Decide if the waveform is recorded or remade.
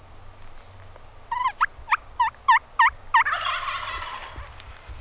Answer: recorded